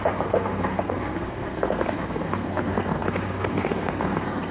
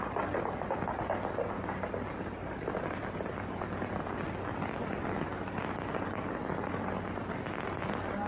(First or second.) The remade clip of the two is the first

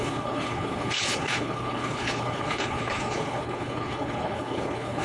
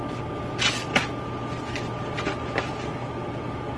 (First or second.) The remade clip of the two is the first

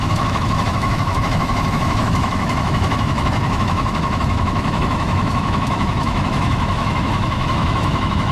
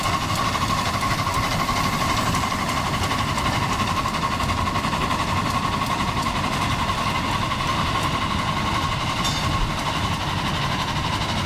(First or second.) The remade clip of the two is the first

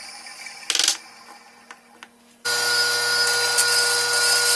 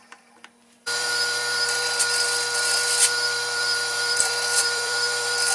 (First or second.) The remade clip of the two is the second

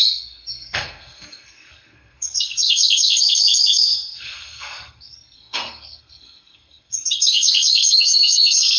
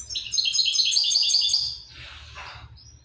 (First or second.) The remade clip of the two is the first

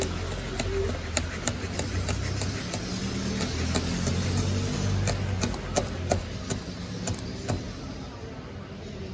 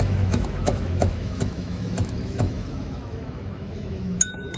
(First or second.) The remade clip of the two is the second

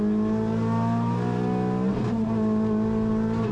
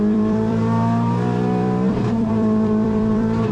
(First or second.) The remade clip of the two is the second